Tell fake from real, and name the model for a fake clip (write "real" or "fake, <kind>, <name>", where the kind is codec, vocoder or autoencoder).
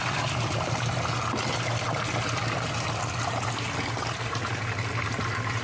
real